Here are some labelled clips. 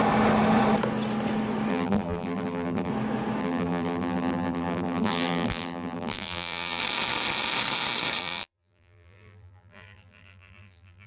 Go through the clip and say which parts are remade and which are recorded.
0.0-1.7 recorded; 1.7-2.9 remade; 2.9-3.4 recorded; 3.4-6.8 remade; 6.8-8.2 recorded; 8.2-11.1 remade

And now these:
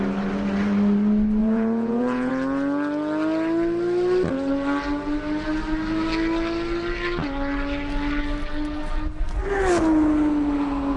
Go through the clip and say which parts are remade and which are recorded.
0.0-1.4 recorded; 1.4-2.3 remade; 2.3-11.0 recorded

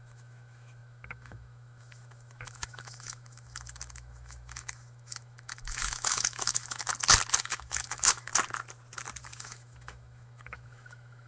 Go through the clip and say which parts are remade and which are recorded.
0.0-6.9 remade; 6.9-7.4 recorded; 7.4-8.3 remade; 8.3-9.2 recorded; 9.2-11.3 remade

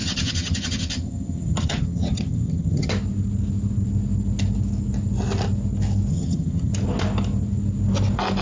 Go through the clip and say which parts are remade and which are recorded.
0.0-2.9 remade; 2.9-6.1 recorded; 6.1-6.7 remade; 6.7-8.4 recorded

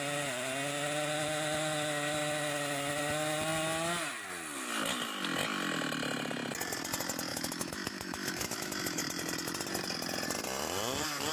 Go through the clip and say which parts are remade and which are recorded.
0.0-7.3 recorded; 7.3-9.0 remade; 9.0-11.3 recorded

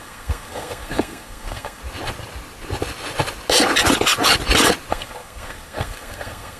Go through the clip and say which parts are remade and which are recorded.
0.0-1.8 remade; 1.8-4.9 recorded; 4.9-6.6 remade

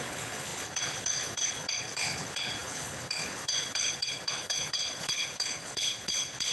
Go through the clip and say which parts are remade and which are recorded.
0.0-6.5 remade